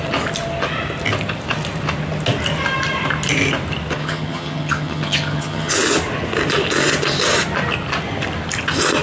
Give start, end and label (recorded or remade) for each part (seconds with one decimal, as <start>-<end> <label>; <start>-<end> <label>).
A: 0.0-4.0 recorded; 4.0-5.7 remade; 5.7-9.0 recorded